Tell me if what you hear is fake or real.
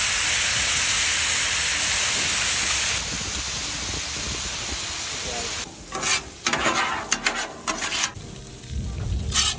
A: real